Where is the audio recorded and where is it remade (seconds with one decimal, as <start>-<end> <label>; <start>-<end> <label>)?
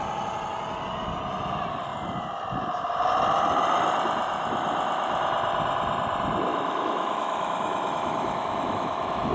0.0-6.5 recorded; 6.5-9.3 remade